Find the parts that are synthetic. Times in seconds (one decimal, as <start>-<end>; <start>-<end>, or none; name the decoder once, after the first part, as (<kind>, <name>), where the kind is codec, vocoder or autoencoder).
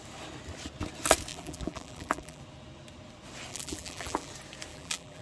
1.3-2.4 (vocoder, BigVGAN v2); 3.5-4.3; 4.7-5.2